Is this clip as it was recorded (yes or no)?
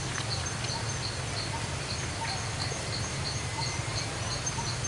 yes